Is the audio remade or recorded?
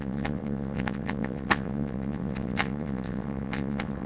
remade